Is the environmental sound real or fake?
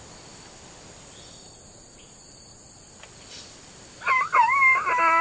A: real